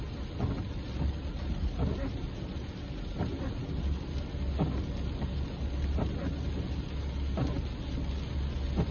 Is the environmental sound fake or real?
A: real